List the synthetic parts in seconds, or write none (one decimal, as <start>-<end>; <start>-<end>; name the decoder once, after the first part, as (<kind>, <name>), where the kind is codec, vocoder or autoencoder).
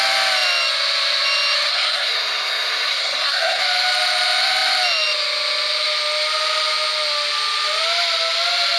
1.7-3.6 (codec, SNAC)